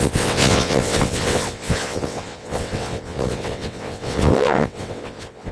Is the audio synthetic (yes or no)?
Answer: yes